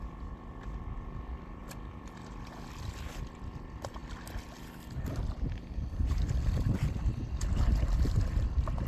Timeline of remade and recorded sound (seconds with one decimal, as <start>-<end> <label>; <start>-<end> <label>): 0.0-8.9 recorded